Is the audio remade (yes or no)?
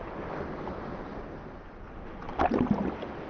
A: no